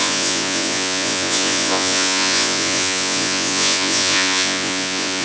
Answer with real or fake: fake